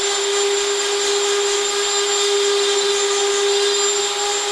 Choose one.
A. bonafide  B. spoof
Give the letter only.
A